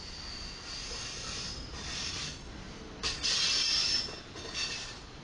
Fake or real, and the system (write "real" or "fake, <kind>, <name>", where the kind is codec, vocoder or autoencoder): real